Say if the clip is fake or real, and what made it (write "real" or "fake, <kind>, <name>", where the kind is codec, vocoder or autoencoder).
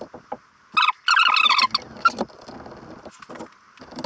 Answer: real